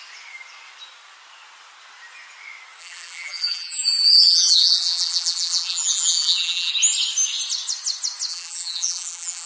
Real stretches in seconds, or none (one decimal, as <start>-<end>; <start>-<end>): 0.0-2.8; 6.7-8.3